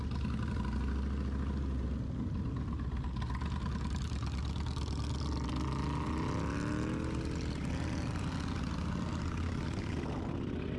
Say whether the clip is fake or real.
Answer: real